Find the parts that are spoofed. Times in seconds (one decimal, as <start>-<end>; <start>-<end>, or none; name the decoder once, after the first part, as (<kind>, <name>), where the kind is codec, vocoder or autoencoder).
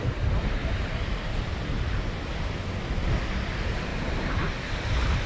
none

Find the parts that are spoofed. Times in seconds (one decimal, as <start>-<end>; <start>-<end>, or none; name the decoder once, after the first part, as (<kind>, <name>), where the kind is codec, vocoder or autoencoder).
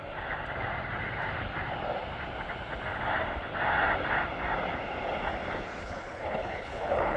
5.8-7.2 (codec, HILCodec)